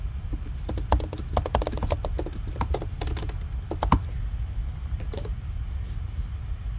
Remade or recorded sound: recorded